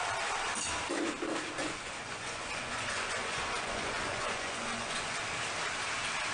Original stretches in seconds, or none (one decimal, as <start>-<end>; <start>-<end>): 0.0-1.6; 5.2-6.3